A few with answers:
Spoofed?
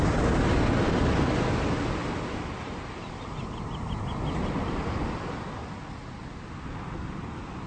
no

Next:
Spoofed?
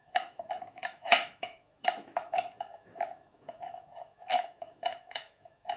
yes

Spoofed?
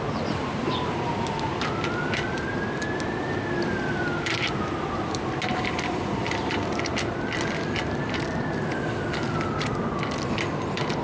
no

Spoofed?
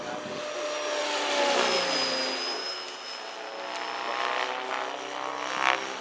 no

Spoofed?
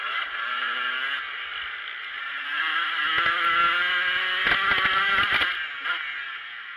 no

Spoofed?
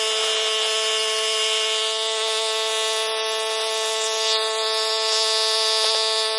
no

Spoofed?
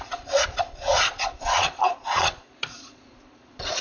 yes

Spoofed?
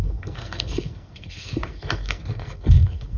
yes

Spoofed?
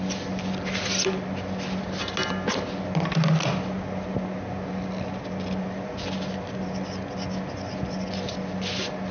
no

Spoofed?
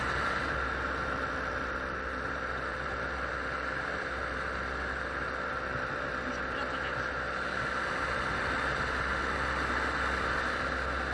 no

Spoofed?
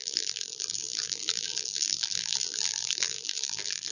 yes